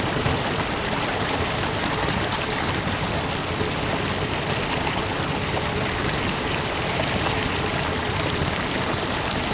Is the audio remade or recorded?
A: recorded